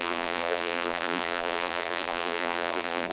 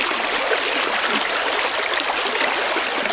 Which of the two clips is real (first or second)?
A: second